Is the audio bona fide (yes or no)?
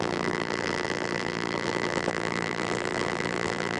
no